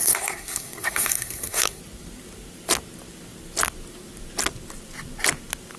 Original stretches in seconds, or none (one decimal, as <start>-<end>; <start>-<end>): 1.8-5.8